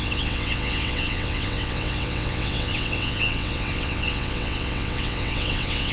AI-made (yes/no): yes